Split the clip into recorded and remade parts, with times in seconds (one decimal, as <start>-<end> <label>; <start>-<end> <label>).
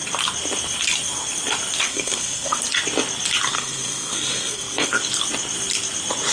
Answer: 0.0-1.9 recorded; 1.9-2.6 remade; 2.6-3.5 recorded; 3.5-5.0 remade; 5.0-6.3 recorded